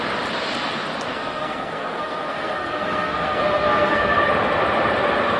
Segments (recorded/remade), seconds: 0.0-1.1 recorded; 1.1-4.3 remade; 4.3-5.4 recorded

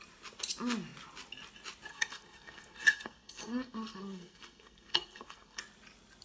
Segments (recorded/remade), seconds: 0.0-1.9 recorded; 1.9-5.6 remade; 5.6-6.2 recorded

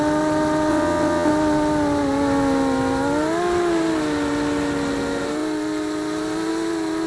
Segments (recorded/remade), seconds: 0.0-0.7 recorded; 0.7-1.3 remade; 1.3-7.1 recorded

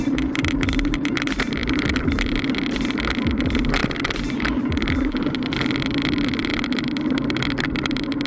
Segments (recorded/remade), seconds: 0.0-8.3 remade